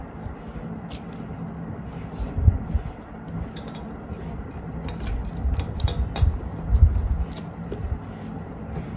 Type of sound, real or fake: real